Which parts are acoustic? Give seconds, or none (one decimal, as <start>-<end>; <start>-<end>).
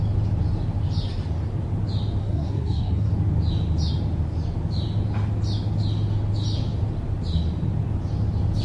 0.0-2.2; 3.1-8.6